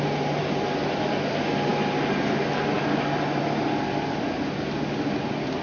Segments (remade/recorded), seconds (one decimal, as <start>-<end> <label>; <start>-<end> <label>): 0.0-5.6 recorded